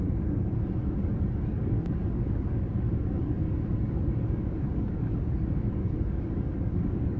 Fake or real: fake